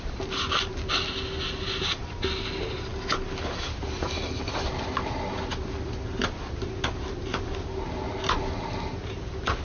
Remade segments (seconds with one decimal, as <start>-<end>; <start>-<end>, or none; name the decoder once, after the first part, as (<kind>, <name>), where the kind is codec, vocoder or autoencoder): none